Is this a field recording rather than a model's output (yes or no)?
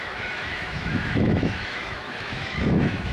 no